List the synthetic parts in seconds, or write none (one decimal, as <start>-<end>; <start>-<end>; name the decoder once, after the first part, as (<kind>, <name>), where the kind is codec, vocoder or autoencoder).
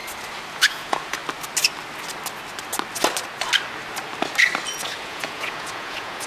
0.5-1.2 (vocoder, Vocos); 5.0-6.3